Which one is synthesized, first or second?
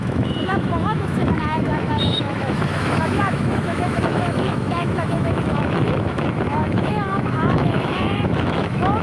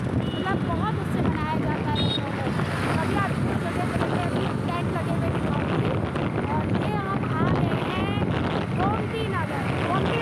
first